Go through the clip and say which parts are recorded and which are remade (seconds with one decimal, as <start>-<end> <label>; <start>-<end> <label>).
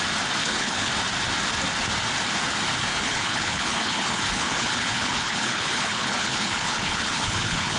0.0-0.4 recorded; 0.4-0.9 remade; 0.9-2.9 recorded; 2.9-7.8 remade